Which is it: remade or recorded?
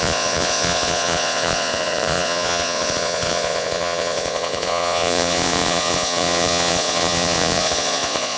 remade